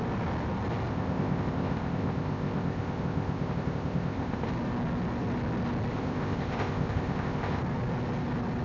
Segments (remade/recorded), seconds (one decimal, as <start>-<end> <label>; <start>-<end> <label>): 0.0-0.9 recorded; 0.9-4.5 remade; 4.5-5.9 recorded; 5.9-7.6 remade; 7.6-8.6 recorded